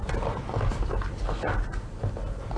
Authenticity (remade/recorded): recorded